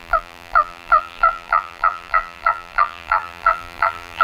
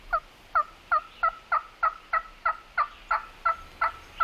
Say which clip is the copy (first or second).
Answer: first